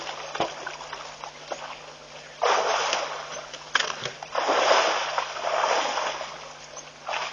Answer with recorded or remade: recorded